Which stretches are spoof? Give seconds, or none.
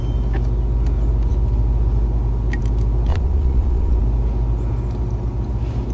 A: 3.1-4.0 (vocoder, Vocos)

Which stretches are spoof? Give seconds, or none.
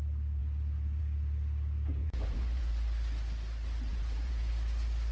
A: 2.0-2.7 (vocoder, Vocos); 3.9-4.5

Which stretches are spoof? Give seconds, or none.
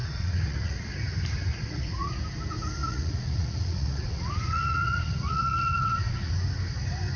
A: 0.0-0.9 (vocoder, Vocos); 1.5-2.2; 2.8-6.3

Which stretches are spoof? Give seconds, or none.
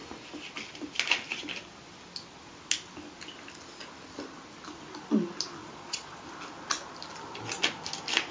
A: 5.6-6.2 (vocoder, Vocos)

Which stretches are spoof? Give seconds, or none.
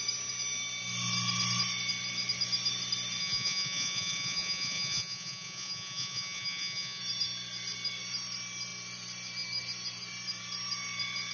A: 3.2-7.0 (vocoder, Vocos)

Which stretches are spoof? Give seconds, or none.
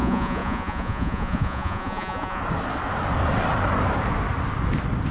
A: 0.0-2.4 (vocoder, Vocos)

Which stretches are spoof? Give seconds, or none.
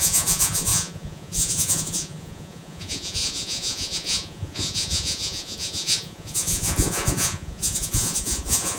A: 0.0-8.8 (vocoder, Vocos)